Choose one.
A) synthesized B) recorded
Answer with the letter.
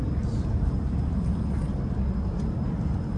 B